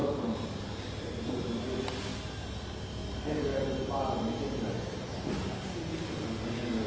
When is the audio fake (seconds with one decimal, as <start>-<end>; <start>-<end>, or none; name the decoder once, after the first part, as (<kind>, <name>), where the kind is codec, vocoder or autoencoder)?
0.0-1.7 (vocoder, BigVGAN v2); 3.5-5.3